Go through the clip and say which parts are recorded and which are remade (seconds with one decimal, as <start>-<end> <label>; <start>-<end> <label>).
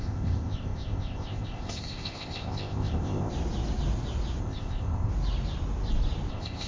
0.0-3.3 remade; 3.3-4.4 recorded; 4.4-5.1 remade; 5.1-6.3 recorded; 6.3-6.7 remade